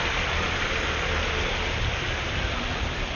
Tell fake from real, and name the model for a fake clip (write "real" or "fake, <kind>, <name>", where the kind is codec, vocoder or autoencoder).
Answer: real